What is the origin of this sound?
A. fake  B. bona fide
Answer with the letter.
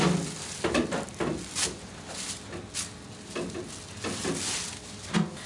B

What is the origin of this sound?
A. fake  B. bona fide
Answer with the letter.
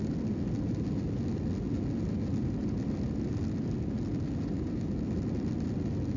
B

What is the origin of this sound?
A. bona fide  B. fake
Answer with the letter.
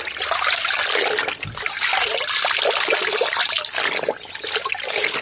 A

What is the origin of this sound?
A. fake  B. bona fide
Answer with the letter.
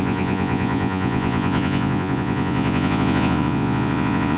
A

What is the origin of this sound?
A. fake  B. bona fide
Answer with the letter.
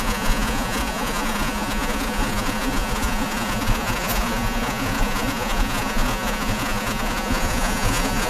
A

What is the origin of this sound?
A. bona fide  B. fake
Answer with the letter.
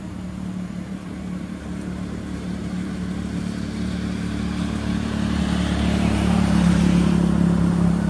B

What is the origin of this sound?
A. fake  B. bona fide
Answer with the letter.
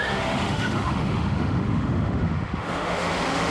A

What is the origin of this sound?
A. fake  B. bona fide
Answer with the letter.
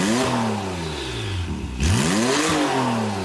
B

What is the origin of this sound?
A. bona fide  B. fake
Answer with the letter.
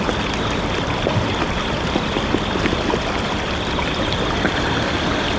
A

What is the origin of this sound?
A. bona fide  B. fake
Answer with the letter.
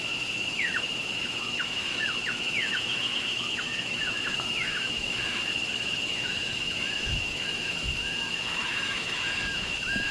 B